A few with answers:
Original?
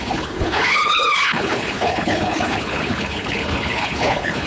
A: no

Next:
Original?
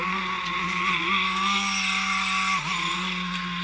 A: yes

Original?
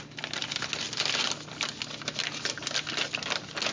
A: yes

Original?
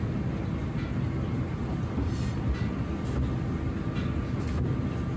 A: yes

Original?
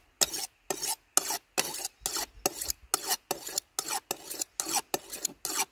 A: yes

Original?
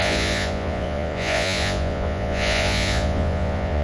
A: no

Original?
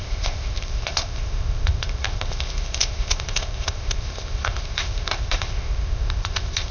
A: no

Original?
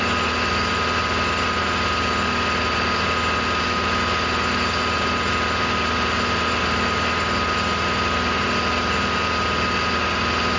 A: yes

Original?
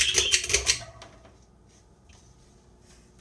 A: yes